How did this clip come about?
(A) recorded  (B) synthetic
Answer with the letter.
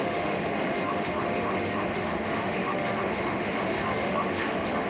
B